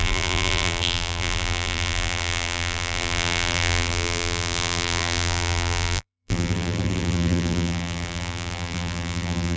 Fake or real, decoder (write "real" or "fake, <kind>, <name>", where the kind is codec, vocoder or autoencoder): fake, vocoder, BigVGAN v2